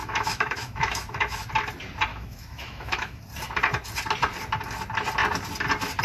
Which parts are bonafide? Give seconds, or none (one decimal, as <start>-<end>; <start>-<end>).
1.5-2.1; 3.2-6.0